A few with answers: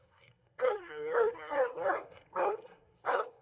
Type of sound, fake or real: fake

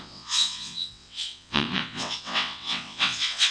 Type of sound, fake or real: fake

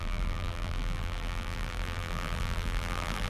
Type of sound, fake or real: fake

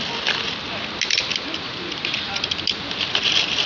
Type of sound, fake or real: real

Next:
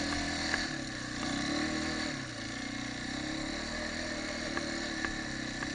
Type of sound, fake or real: real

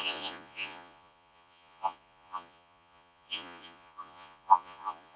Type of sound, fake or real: fake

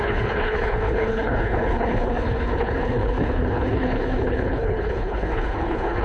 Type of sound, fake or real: fake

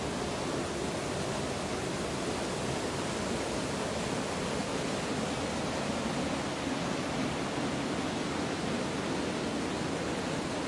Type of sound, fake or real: real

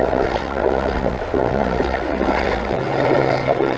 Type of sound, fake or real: fake